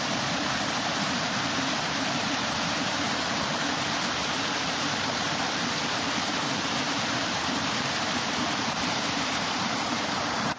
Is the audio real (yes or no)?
no